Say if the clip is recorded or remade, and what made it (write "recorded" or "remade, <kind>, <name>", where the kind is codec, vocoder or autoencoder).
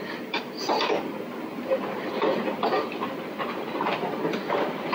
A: recorded